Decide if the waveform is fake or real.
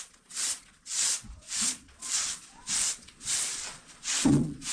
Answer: fake